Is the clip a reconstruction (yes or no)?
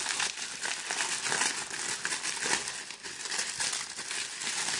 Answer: no